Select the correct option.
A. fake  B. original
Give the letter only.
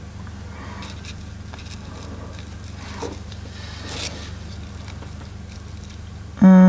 B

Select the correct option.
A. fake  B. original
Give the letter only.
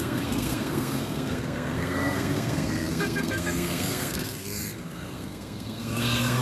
A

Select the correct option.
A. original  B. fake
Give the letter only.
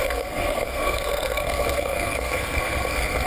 B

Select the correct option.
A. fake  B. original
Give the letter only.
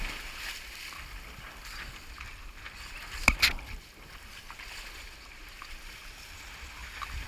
B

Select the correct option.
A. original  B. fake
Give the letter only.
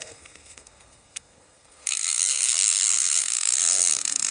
B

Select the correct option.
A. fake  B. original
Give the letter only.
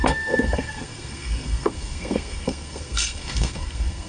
A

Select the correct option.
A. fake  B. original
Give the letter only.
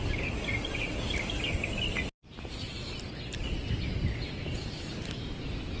B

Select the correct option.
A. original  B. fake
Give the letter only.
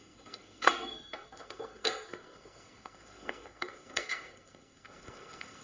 B